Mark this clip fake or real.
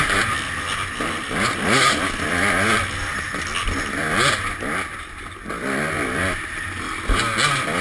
real